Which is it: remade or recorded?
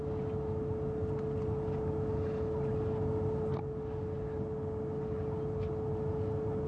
recorded